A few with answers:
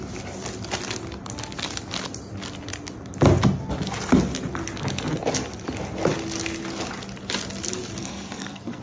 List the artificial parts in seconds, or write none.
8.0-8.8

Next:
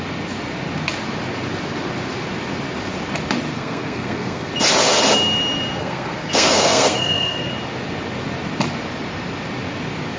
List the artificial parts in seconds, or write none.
3.5-4.5; 5.8-7.5

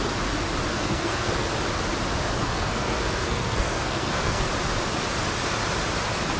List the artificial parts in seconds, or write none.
0.7-1.3; 2.4-4.5

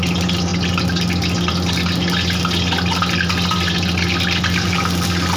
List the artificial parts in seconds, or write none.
none